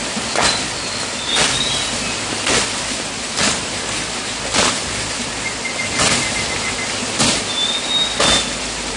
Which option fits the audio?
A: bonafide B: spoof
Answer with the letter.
A